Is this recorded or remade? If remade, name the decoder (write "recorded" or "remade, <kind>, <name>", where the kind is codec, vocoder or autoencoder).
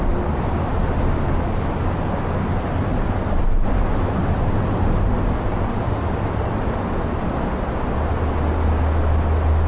recorded